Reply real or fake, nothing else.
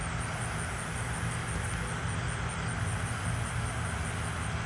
real